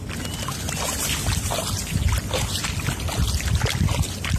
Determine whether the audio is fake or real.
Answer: real